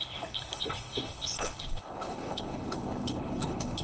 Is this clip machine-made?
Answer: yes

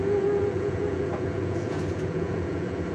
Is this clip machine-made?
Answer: yes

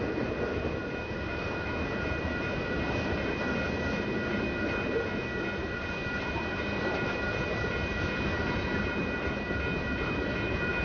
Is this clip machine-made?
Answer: yes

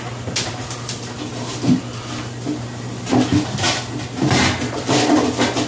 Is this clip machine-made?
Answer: no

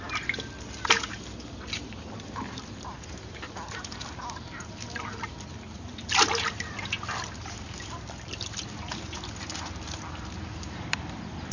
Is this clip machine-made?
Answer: no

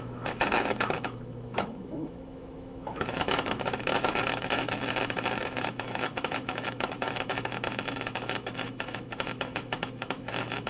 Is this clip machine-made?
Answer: yes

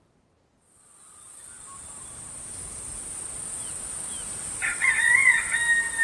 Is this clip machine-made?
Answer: no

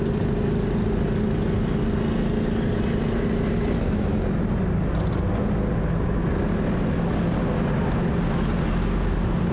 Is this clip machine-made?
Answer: no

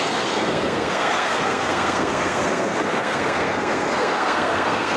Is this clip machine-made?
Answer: yes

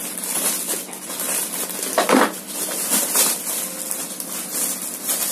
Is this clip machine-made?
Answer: no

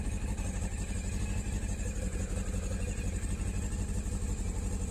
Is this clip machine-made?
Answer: no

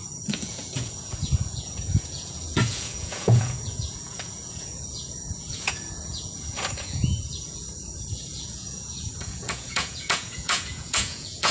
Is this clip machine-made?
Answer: yes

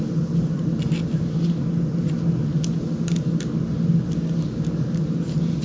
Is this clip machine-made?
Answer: no